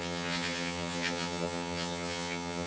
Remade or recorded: remade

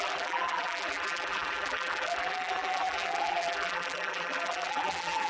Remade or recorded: remade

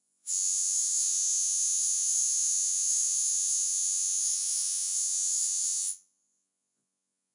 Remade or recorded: remade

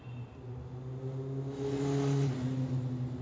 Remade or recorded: recorded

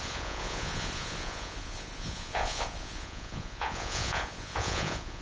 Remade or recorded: remade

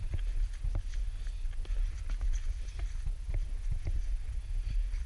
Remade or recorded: recorded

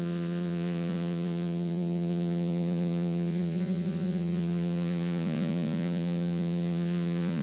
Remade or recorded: remade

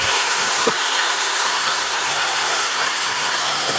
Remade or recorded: remade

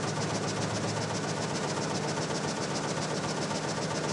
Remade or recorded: recorded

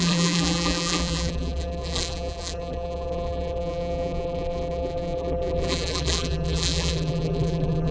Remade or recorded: remade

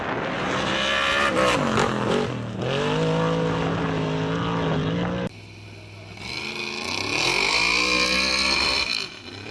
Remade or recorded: recorded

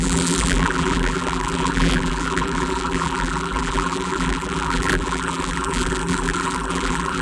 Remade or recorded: remade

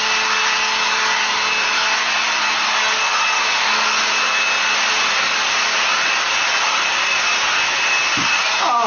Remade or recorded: recorded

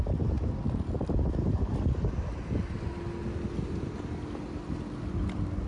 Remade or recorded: recorded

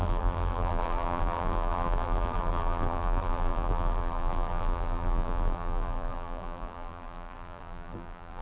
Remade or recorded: remade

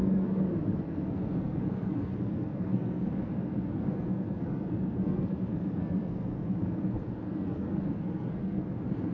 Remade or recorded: remade